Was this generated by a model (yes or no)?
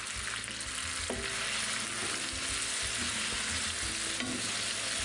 no